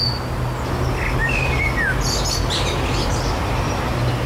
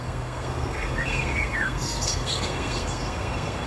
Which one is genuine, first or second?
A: first